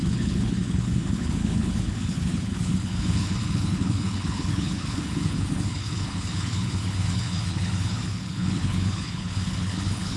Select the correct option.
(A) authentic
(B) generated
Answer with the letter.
B